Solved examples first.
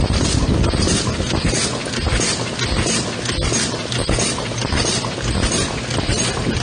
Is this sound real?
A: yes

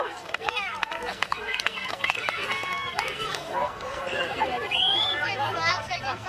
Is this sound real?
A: no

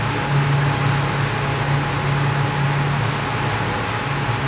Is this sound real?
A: yes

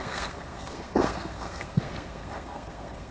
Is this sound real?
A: no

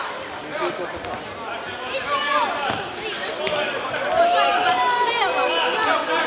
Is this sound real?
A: yes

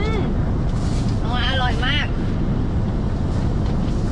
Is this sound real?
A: yes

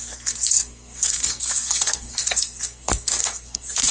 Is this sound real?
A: no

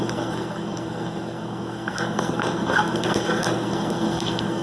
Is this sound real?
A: no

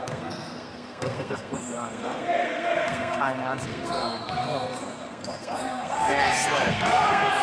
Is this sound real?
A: no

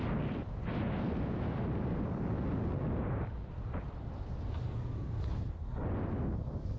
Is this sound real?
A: yes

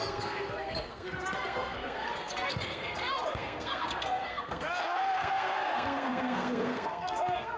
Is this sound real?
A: no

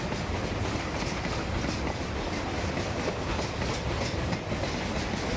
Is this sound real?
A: yes